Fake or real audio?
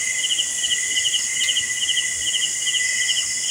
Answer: real